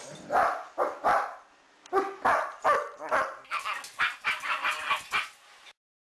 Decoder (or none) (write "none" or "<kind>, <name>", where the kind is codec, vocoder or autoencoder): none